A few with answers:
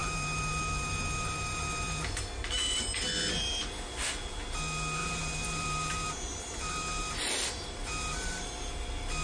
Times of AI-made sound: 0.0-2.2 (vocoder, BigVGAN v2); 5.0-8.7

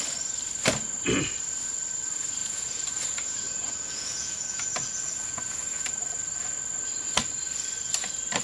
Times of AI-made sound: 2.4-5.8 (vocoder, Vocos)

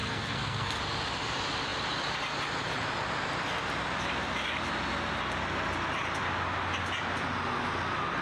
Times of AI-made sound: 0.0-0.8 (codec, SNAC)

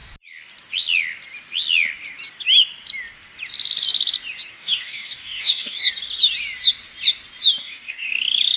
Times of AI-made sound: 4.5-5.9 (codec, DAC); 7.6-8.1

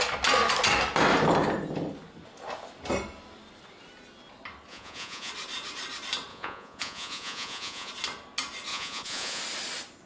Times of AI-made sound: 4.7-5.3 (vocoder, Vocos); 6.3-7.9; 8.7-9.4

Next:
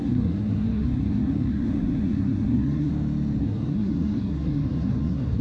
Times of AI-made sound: 0.0-2.9 (codec, SNAC); 3.4-5.4

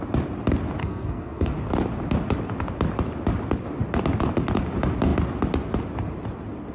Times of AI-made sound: 0.8-1.5 (codec, SNAC)